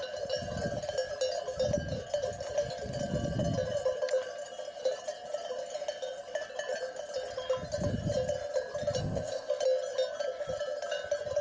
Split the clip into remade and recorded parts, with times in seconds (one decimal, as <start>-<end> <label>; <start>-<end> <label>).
0.0-9.0 recorded; 9.0-9.5 remade; 9.5-11.4 recorded